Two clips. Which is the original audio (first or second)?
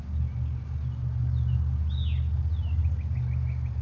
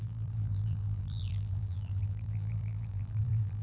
first